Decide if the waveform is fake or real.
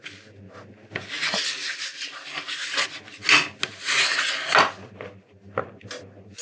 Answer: real